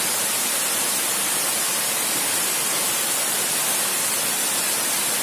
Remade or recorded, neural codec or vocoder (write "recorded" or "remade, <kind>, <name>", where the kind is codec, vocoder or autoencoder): recorded